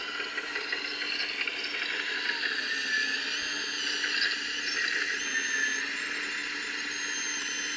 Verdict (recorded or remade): recorded